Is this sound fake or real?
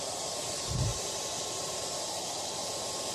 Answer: fake